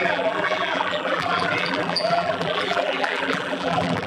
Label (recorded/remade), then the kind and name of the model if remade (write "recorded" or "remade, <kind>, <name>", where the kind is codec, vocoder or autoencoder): remade, vocoder, BigVGAN v2